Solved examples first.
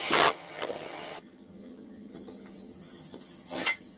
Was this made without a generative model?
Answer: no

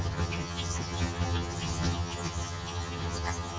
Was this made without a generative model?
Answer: no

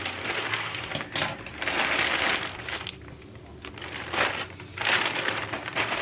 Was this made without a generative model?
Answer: yes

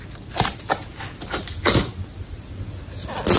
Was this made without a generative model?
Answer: yes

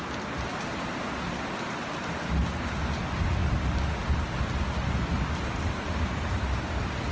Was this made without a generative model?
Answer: yes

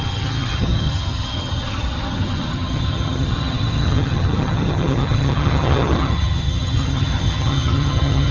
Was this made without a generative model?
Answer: no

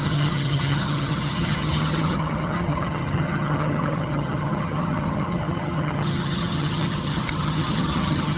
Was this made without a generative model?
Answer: no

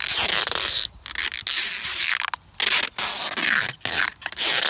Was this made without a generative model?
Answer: yes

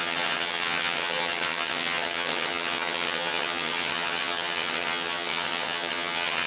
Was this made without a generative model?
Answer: no